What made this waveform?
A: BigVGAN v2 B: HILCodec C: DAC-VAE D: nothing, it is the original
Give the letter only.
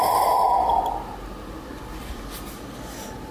D